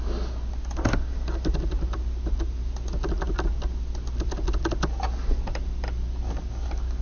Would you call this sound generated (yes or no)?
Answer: no